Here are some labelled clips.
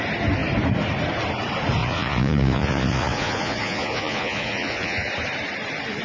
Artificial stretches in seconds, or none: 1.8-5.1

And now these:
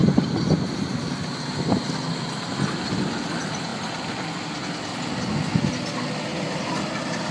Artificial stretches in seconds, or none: 0.0-1.9; 6.3-7.3

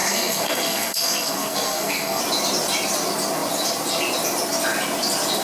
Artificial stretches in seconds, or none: 0.0-2.2

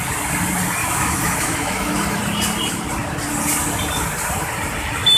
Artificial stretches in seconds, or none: 0.8-2.2